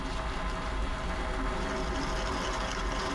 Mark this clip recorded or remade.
recorded